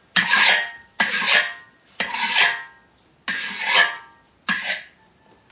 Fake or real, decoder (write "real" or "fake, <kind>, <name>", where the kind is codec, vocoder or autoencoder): real